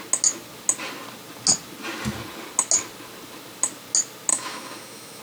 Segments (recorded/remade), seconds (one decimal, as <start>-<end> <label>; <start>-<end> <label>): 0.0-4.3 recorded; 4.3-5.2 remade